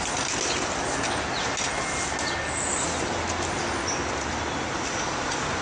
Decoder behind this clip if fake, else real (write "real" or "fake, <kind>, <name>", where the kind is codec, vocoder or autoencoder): real